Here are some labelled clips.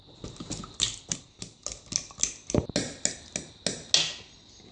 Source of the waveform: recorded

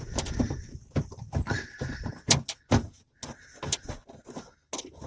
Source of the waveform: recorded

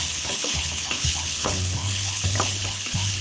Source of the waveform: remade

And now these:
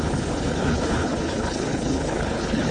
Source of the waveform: remade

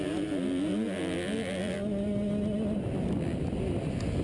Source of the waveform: recorded